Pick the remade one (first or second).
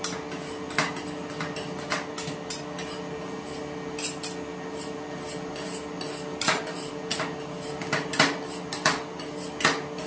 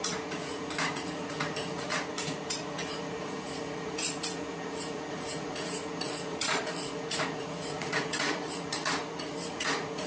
second